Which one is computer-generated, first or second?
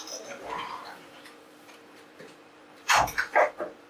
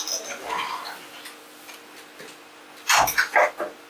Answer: first